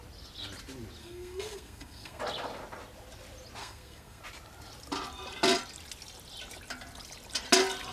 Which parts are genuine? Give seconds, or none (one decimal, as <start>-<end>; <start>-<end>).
0.0-1.0; 2.2-3.6; 4.2-7.9